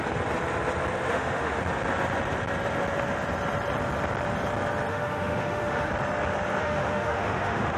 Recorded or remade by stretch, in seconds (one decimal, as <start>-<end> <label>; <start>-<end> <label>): 0.0-1.1 recorded; 1.1-1.6 remade; 1.6-4.9 recorded; 4.9-5.9 remade; 5.9-6.6 recorded; 6.6-7.8 remade